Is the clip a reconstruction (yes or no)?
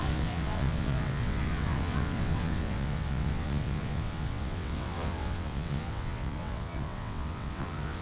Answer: yes